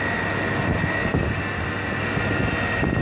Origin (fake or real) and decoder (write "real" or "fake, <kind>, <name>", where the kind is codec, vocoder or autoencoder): real